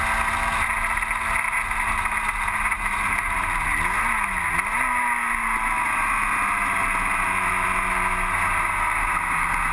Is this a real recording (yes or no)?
yes